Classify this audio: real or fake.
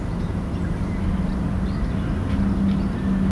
real